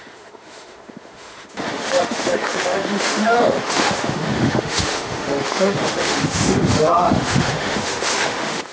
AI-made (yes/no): yes